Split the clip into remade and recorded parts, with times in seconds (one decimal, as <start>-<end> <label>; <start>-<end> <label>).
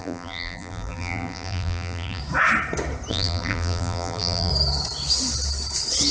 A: 0.0-2.2 remade; 2.2-3.1 recorded; 3.1-4.5 remade; 4.5-6.1 recorded